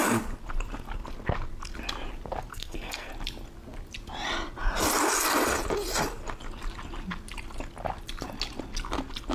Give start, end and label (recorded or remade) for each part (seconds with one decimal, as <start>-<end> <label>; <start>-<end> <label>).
0.0-2.5 recorded; 2.5-3.1 remade; 3.1-9.3 recorded